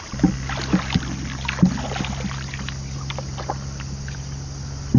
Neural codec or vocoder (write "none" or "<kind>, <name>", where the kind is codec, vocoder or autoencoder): none